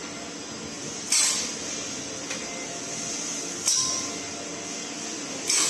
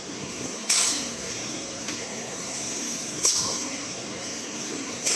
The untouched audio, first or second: first